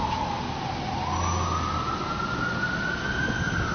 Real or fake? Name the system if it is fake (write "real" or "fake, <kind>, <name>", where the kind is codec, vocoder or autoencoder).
real